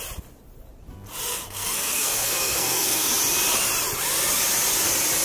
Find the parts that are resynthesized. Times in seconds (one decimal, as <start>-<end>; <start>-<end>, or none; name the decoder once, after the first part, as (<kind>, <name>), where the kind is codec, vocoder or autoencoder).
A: 1.3-3.1 (codec, SNAC)